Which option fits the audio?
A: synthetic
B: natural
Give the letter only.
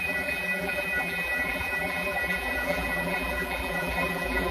A